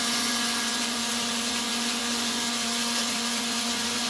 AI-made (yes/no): yes